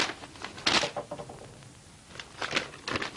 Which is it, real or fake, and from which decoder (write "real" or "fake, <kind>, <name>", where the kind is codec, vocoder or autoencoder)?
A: real